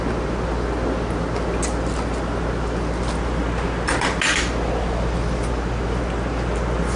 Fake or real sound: real